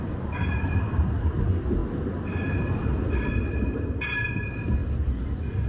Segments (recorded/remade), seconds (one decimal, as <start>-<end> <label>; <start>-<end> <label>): 0.0-5.7 recorded